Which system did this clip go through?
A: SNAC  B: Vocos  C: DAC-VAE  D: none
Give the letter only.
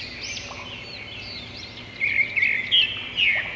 D